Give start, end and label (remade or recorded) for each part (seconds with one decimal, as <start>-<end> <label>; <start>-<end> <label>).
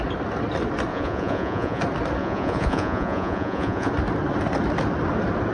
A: 0.0-0.9 recorded; 0.9-1.8 remade; 1.8-2.2 recorded; 2.2-3.9 remade; 3.9-5.5 recorded